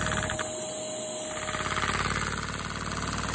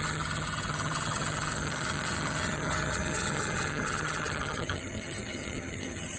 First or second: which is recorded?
first